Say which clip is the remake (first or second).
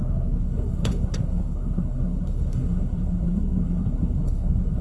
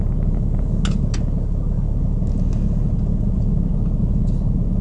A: first